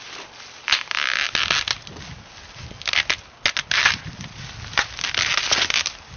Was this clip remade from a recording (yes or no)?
no